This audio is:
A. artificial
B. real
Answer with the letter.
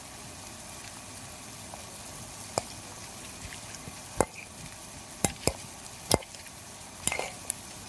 B